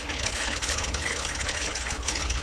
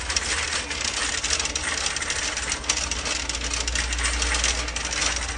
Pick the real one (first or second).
second